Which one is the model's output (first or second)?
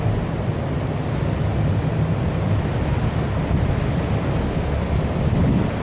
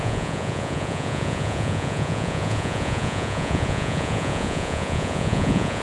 second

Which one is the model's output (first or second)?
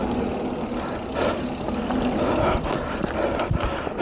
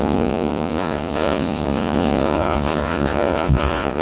second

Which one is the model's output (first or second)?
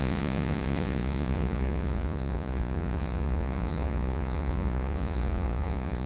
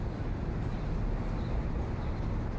first